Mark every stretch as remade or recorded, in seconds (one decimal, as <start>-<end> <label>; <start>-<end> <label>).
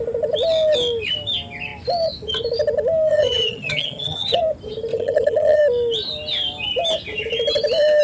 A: 0.0-3.1 recorded; 3.1-4.4 remade; 4.4-4.9 recorded; 4.9-5.6 remade; 5.6-8.0 recorded